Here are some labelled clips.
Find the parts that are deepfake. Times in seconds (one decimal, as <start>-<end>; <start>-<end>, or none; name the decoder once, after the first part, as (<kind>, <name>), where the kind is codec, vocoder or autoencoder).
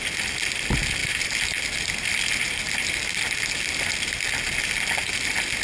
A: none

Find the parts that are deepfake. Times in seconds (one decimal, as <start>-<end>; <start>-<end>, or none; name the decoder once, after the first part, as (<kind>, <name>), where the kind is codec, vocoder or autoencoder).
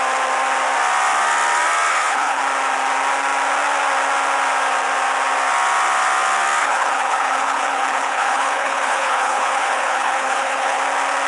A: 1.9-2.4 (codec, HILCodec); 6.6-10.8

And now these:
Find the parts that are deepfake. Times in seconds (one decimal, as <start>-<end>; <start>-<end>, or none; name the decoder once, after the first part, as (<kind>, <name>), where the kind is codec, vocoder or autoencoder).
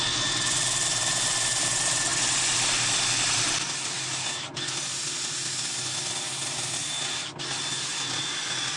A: none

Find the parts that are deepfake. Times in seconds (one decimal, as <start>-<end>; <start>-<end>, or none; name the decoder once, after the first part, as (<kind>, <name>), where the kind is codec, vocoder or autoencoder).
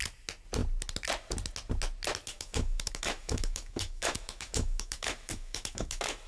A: 2.3-6.3 (autoencoder, DAC-VAE)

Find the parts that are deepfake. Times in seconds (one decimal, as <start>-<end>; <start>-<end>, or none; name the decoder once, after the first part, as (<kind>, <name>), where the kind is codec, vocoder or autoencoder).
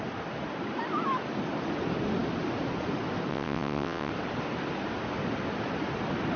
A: 3.3-4.1 (vocoder, WaveNeXt)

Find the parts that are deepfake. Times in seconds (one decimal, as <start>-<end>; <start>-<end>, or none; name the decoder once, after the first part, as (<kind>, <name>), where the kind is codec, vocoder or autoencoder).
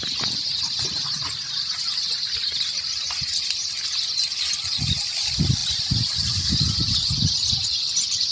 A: none